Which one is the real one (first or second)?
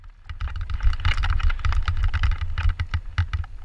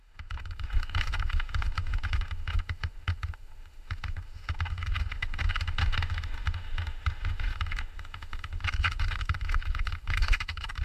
first